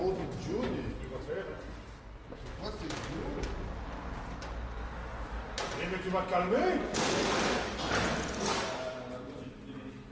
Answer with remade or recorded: recorded